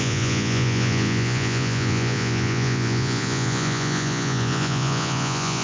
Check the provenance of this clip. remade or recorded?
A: remade